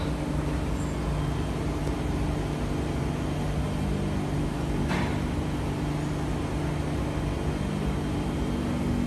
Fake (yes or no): no